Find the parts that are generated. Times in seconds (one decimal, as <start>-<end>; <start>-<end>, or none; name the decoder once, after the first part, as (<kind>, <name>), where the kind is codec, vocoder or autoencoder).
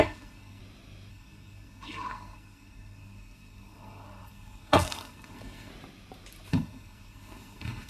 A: 0.0-0.6 (codec, SNAC); 1.1-5.7; 6.5-7.9